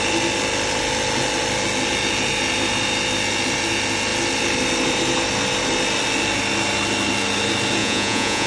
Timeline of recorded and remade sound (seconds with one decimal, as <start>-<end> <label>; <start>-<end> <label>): 0.0-7.8 recorded; 7.8-8.5 remade